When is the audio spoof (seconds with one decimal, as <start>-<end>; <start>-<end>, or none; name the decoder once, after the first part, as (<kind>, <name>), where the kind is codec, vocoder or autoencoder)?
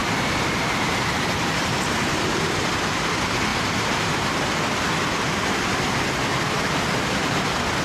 0.0-2.6 (vocoder, BigVGAN v2); 3.5-4.6; 6.3-6.8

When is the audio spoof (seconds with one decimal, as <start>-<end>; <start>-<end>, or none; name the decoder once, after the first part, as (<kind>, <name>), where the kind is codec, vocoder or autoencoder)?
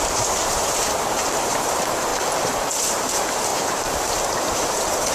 0.0-2.1 (vocoder, BigVGAN v2); 2.9-5.1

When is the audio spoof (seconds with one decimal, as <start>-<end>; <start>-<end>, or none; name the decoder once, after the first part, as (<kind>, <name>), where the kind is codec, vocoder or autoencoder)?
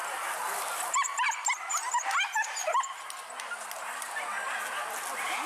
none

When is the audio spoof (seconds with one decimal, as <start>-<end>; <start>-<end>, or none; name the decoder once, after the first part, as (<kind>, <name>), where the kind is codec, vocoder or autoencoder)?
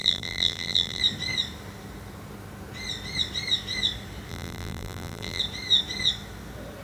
0.0-1.0 (vocoder, BigVGAN v2); 4.3-5.4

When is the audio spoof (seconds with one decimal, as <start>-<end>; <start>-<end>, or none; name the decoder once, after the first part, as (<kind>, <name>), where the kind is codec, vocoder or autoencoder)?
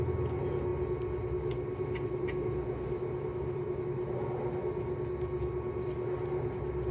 none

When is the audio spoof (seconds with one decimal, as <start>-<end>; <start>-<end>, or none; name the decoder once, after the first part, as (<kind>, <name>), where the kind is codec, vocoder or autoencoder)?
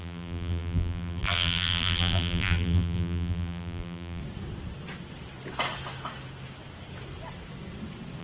0.0-4.2 (vocoder, BigVGAN v2)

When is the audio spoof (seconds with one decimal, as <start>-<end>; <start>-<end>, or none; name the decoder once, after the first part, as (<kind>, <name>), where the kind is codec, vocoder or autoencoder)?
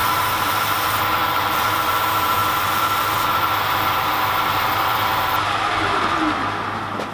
0.0-1.9 (vocoder, BigVGAN v2); 2.4-5.4